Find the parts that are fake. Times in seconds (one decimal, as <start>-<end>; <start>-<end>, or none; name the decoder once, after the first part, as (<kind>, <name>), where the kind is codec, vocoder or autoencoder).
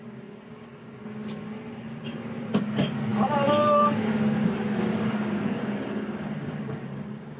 0.0-1.0 (codec, DAC); 2.4-7.4